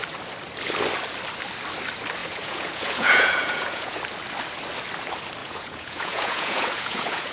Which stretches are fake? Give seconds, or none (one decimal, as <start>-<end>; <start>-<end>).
2.2-4.0; 5.4-7.3